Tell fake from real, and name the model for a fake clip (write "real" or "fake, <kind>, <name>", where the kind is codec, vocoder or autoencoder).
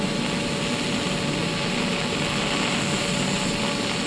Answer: real